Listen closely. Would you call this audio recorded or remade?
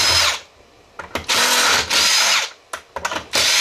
recorded